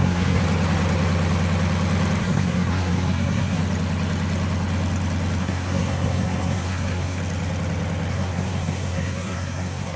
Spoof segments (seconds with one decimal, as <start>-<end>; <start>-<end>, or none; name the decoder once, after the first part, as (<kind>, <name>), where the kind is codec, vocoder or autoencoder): 0.0-0.4 (codec, SNAC); 2.2-3.6; 5.4-7.2; 8.1-10.0